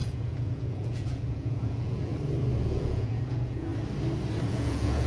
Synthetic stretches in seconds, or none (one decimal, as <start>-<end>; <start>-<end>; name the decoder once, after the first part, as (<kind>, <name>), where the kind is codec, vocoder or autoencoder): 0.0-2.1 (vocoder, Vocos); 2.6-3.7; 4.5-5.1